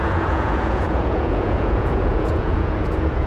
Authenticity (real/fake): fake